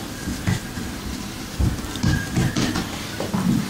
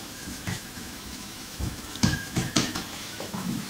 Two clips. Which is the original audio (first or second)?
first